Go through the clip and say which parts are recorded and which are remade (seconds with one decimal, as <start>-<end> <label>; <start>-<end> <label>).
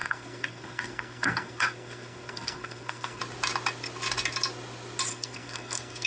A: 0.0-3.2 remade; 3.2-5.1 recorded; 5.1-6.1 remade